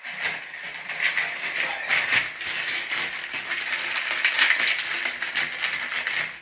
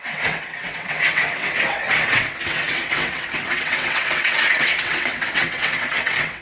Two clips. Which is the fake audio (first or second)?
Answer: second